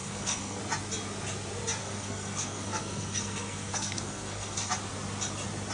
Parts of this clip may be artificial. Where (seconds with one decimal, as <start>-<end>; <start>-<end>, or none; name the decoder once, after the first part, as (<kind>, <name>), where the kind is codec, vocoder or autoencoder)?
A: 0.0-0.6 (codec, SNAC); 1.8-4.7